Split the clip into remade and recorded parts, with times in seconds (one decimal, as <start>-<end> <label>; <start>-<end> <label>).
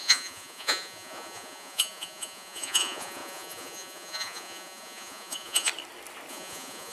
0.0-5.7 remade; 5.7-6.3 recorded; 6.3-6.9 remade